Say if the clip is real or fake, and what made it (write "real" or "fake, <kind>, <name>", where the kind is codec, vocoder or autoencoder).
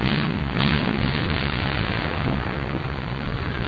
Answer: fake, vocoder, WaveNeXt